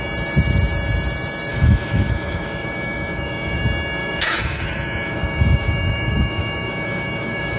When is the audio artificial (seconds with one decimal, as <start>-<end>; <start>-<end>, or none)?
1.5-3.6; 4.0-7.6